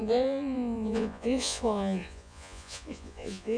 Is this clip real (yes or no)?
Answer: no